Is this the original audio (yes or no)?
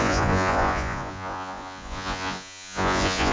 no